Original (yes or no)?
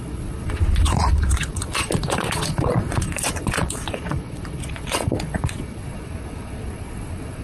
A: no